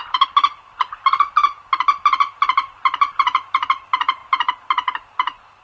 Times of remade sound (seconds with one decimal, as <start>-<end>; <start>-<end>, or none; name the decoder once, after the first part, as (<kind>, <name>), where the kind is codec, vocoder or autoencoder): none